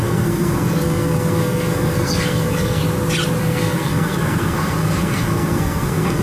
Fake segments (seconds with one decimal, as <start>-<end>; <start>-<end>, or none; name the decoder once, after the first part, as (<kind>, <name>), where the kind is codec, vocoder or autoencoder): 0.0-2.8 (codec, SNAC); 3.4-6.2